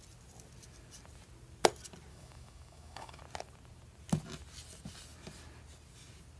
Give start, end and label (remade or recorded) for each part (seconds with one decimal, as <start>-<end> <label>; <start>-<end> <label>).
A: 0.0-2.1 recorded; 2.1-3.2 remade; 3.2-6.4 recorded